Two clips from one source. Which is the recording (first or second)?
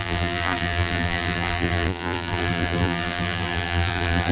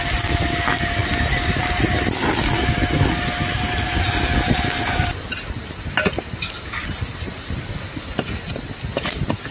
second